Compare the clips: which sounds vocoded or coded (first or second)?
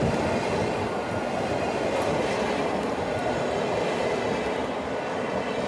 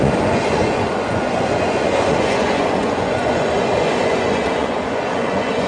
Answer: second